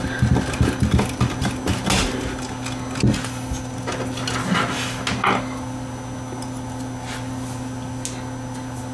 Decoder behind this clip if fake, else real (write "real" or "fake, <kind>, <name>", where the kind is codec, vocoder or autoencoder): real